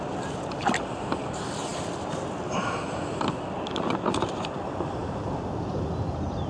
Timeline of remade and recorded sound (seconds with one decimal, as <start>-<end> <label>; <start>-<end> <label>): 0.0-6.5 recorded